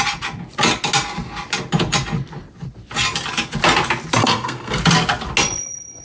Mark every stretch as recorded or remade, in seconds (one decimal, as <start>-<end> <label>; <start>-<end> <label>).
0.0-4.2 recorded; 4.2-4.8 remade; 4.8-6.0 recorded